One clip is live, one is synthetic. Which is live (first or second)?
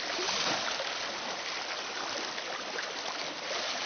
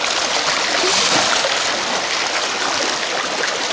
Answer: second